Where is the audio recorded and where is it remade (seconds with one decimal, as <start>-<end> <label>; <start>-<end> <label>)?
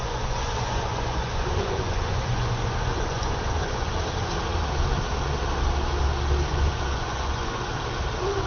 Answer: 0.0-3.9 remade; 3.9-6.5 recorded; 6.5-7.6 remade; 7.6-8.5 recorded